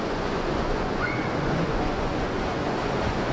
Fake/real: fake